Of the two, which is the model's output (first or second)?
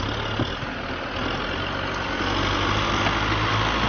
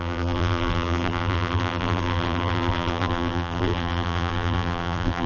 second